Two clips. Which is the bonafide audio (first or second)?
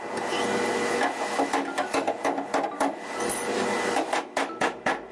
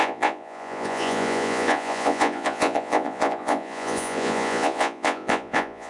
first